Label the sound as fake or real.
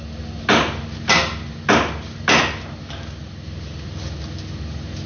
real